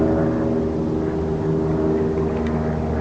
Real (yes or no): yes